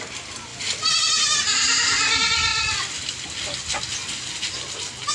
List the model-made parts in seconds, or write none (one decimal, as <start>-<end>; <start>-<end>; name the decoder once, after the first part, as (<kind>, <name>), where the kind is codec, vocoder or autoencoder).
none